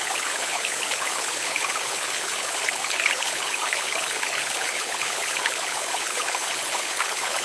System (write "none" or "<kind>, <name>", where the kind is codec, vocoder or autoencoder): codec, HILCodec